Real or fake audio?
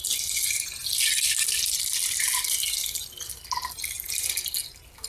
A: real